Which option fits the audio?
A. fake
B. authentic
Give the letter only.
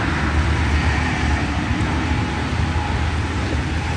B